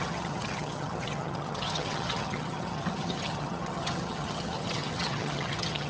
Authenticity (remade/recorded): remade